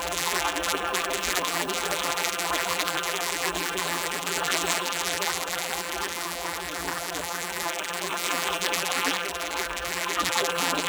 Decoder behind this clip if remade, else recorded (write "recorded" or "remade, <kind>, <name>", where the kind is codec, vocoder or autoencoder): remade, vocoder, BigVGAN v2